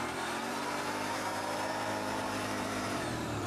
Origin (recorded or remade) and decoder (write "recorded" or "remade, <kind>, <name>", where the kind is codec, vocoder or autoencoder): remade, vocoder, BigVGAN v2